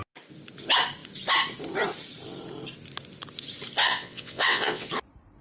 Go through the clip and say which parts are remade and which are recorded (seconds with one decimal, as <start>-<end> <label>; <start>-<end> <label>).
0.0-3.8 recorded; 3.8-4.9 remade; 4.9-5.4 recorded